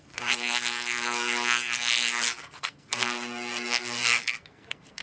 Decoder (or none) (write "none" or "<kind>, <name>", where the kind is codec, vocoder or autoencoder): codec, SNAC